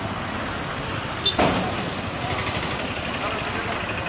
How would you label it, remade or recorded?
recorded